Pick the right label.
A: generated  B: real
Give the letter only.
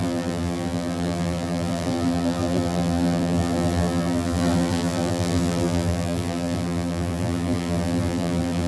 A